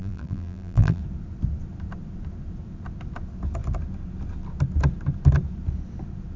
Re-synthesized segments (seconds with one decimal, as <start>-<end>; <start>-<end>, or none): 0.0-1.0

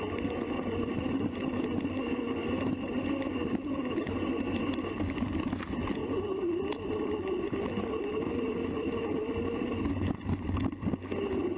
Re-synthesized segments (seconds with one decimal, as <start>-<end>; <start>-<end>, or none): 6.0-9.9